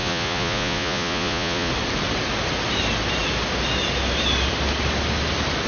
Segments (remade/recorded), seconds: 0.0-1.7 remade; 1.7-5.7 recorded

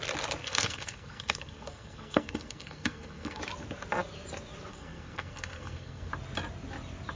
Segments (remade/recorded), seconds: 0.0-0.4 recorded; 0.4-3.4 remade; 3.4-4.7 recorded; 4.7-6.1 remade; 6.1-7.2 recorded

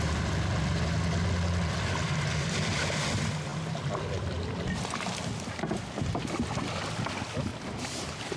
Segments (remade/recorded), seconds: 0.0-7.5 recorded; 7.5-8.4 remade

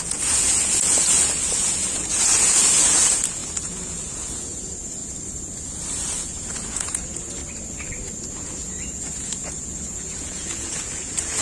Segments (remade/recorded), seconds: 0.0-5.0 remade; 5.0-6.2 recorded; 6.2-7.4 remade; 7.4-8.3 recorded; 8.3-11.4 remade

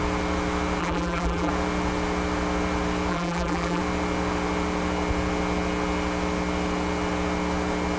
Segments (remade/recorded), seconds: 0.0-0.8 recorded; 0.8-1.5 remade; 1.5-3.1 recorded; 3.1-3.8 remade; 3.8-8.0 recorded